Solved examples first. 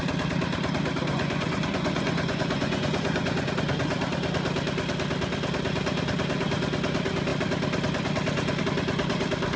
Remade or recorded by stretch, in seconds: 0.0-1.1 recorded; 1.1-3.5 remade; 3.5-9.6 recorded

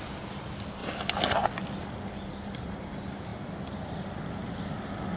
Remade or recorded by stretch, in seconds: 0.0-5.2 recorded

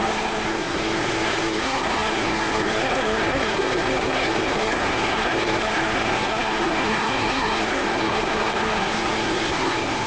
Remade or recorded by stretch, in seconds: 0.0-10.1 remade

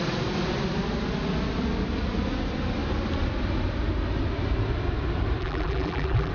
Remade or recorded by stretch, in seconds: 0.0-5.4 recorded; 5.4-6.3 remade

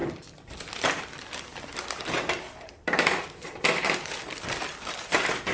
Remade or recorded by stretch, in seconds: 0.0-5.5 remade